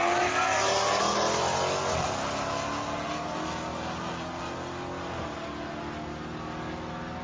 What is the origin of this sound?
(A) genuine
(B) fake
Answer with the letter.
A